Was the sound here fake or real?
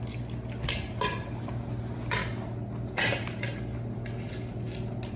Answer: real